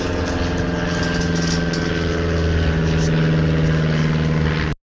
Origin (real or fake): real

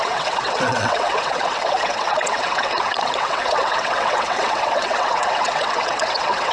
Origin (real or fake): fake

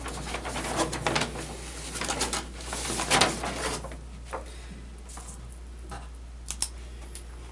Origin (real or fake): real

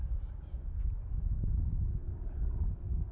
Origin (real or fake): real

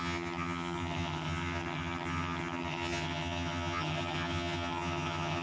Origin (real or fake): fake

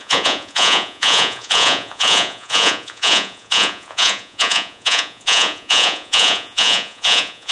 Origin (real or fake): fake